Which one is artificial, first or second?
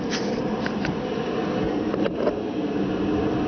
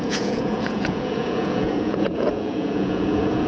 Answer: second